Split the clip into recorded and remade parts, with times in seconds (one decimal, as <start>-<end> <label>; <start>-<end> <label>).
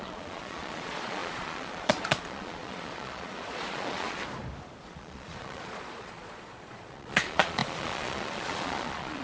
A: 0.0-4.2 remade; 4.2-4.8 recorded; 4.8-9.2 remade